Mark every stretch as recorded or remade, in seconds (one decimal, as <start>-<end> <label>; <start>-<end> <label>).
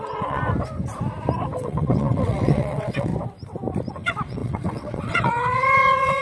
0.0-0.4 remade; 0.4-1.6 recorded; 1.6-3.1 remade; 3.1-3.9 recorded; 3.9-6.2 remade